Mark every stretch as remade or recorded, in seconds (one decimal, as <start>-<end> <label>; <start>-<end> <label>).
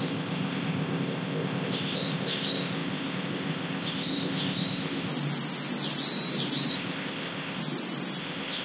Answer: 0.0-5.1 remade; 5.1-6.7 recorded; 6.7-7.6 remade; 7.6-8.2 recorded; 8.2-8.6 remade